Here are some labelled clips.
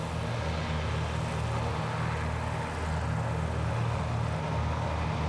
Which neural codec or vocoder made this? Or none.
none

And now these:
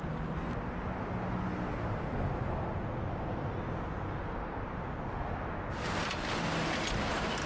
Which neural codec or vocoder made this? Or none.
none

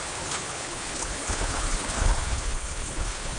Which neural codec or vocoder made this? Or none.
codec, HILCodec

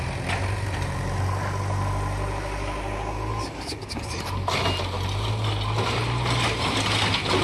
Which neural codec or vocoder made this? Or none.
none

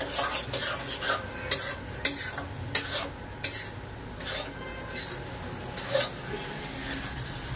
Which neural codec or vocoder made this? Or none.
none